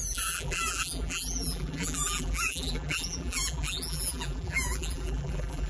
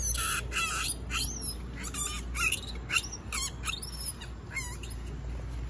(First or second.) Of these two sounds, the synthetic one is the first